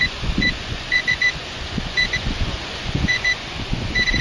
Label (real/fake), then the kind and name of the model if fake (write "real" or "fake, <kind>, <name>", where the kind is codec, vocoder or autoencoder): fake, vocoder, Vocos